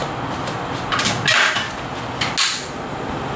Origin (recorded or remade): recorded